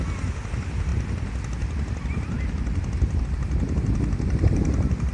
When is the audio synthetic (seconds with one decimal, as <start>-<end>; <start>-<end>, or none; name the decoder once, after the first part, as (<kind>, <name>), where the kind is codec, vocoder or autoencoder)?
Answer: none

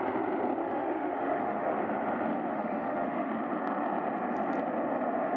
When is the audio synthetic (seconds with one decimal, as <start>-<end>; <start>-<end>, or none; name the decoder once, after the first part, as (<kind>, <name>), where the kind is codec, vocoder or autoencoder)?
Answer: 0.6-1.8 (autoencoder, DAC-VAE); 2.5-3.3

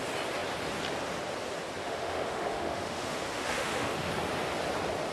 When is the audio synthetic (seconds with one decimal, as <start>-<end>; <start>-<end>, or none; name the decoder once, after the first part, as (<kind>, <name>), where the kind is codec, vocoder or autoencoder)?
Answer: 1.8-4.1 (autoencoder, DAC-VAE)

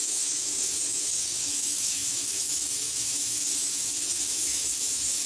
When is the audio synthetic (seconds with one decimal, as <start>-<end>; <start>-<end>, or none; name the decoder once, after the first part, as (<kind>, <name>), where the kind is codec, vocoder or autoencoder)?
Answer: 0.0-5.3 (autoencoder, DAC-VAE)

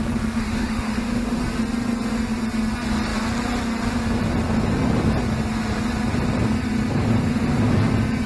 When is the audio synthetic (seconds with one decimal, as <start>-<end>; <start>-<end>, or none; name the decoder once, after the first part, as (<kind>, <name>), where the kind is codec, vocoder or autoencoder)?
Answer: 0.4-1.4 (autoencoder, DAC-VAE)